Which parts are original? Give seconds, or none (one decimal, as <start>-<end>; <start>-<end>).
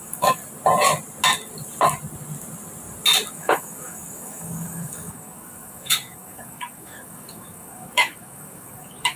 0.4-3.3